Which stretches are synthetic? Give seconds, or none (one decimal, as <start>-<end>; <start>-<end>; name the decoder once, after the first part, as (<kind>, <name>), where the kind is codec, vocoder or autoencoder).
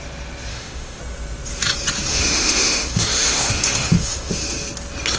0.5-1.0 (autoencoder, DAC-VAE); 2.1-4.3